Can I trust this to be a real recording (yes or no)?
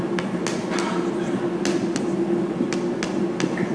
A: yes